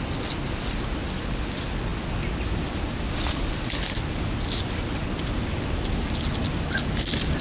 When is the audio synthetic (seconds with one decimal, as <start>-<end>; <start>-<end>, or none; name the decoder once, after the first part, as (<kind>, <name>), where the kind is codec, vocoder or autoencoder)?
none